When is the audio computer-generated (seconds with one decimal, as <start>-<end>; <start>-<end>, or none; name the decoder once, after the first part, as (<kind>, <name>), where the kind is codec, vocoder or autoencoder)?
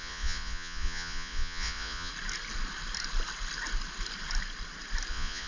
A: 0.0-2.1 (vocoder, Vocos); 5.1-5.5